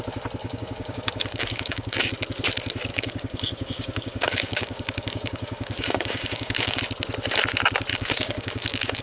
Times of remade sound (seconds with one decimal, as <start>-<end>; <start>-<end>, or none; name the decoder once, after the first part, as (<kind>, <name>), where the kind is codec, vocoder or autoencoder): 0.4-2.1 (codec, DAC); 2.9-6.8; 7.9-9.0